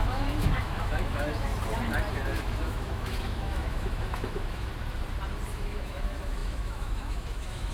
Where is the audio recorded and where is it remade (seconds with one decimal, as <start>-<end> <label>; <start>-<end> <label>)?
0.0-1.5 remade; 1.5-2.1 recorded; 2.1-4.7 remade; 4.7-5.5 recorded; 5.5-7.7 remade